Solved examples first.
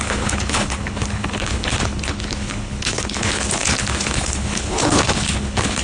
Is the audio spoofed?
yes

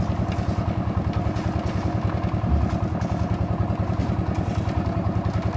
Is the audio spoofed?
no